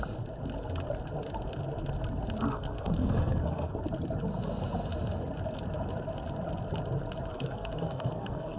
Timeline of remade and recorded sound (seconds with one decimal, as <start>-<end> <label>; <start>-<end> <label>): 0.0-2.5 recorded; 2.5-3.7 remade; 3.7-7.3 recorded; 7.3-8.6 remade